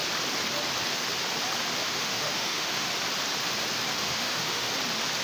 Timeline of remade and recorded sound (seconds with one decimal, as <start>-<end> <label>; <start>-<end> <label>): 0.0-1.8 recorded; 1.8-2.9 remade; 2.9-4.0 recorded; 4.0-4.7 remade; 4.7-5.2 recorded